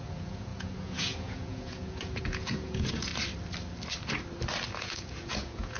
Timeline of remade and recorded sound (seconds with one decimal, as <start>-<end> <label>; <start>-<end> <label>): 0.0-3.1 remade; 3.1-4.7 recorded; 4.7-5.8 remade